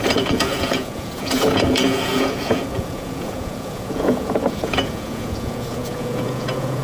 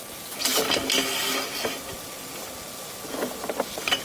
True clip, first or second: second